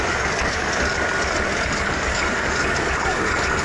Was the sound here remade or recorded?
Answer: remade